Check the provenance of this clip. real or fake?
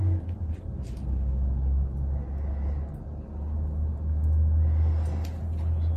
real